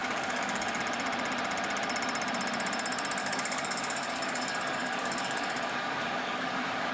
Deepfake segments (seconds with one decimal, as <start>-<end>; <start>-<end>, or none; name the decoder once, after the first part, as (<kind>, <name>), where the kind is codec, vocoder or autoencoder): 0.0-0.8 (codec, DAC); 3.2-6.9